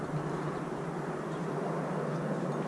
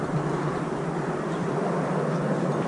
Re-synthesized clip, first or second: second